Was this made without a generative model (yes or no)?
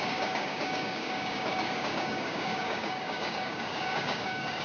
no